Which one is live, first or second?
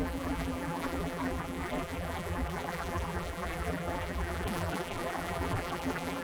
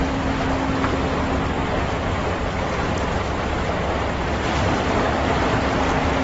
second